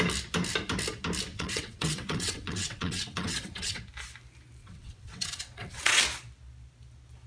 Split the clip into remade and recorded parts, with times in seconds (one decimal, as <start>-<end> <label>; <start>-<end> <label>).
0.0-1.3 recorded; 1.3-3.8 remade; 3.8-4.6 recorded; 4.6-6.0 remade; 6.0-7.3 recorded